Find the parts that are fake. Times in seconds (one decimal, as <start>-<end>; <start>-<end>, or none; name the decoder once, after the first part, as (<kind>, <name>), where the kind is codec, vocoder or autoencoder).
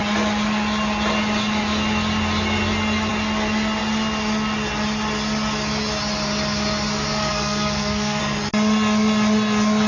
7.3-8.2 (codec, SNAC)